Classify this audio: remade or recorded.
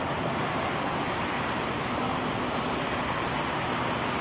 recorded